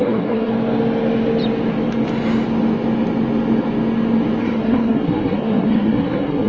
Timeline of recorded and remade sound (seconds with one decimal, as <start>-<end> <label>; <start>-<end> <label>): 0.0-0.5 remade; 0.5-4.4 recorded; 4.4-6.5 remade